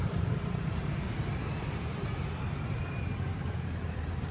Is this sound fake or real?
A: fake